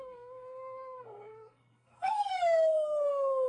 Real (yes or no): no